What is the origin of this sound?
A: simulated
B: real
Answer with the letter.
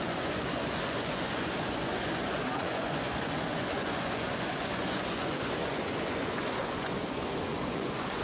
A